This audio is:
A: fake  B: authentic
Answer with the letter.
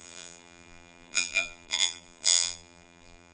A